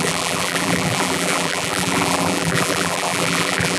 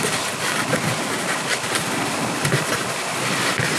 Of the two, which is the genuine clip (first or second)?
second